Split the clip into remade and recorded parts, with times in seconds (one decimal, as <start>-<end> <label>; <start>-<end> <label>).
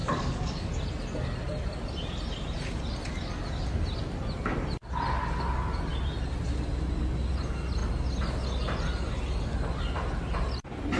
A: 0.0-0.7 remade; 0.7-11.0 recorded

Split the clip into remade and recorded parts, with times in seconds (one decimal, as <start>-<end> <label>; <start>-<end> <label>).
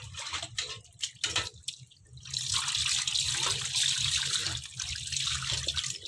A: 0.0-6.1 recorded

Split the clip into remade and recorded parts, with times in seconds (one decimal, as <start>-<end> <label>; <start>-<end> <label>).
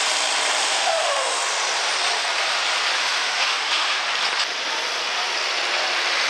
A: 0.0-0.6 recorded; 0.6-1.4 remade; 1.4-3.0 recorded; 3.0-4.0 remade; 4.0-6.3 recorded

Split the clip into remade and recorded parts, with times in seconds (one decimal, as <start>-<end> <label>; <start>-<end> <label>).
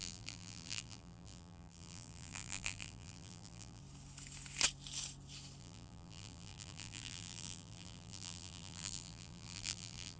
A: 0.0-3.8 remade; 3.8-5.6 recorded; 5.6-10.2 remade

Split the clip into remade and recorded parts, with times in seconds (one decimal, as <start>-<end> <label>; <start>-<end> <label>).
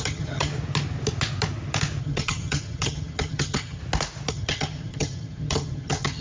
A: 0.0-0.5 remade; 0.5-2.0 recorded; 2.0-3.8 remade; 3.8-4.3 recorded; 4.3-6.2 remade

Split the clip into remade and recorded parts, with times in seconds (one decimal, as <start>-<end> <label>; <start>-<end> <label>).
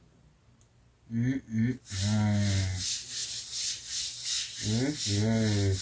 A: 0.0-5.8 recorded